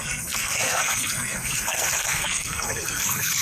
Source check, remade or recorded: remade